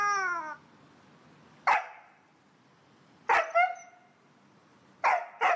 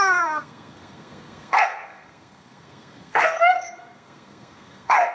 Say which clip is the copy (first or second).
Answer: second